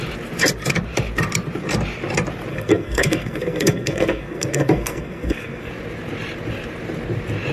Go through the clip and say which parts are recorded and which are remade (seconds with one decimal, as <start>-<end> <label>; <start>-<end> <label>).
0.0-2.5 recorded; 2.5-5.7 remade; 5.7-7.5 recorded